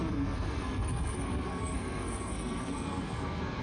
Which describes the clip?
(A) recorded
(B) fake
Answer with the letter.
B